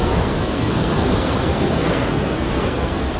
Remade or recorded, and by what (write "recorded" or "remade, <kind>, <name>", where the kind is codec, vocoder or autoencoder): remade, codec, SNAC